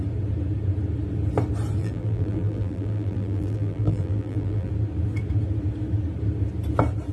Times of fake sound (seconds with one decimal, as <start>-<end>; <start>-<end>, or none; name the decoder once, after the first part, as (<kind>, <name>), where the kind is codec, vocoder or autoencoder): 1.8-4.7 (vocoder, BigVGAN v2)